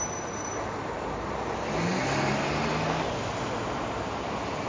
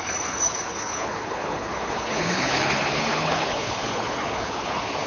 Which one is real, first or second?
first